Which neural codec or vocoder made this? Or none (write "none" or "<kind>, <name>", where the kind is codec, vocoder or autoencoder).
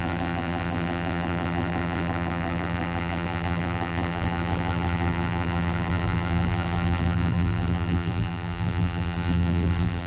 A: vocoder, BigVGAN v2